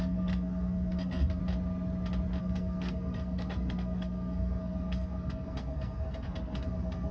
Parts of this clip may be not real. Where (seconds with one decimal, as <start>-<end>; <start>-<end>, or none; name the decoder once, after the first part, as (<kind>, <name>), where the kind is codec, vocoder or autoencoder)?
0.0-1.4 (codec, SNAC); 2.4-7.1